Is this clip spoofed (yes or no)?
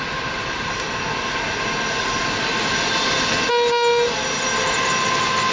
no